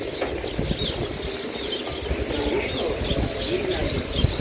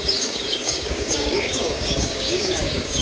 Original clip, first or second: first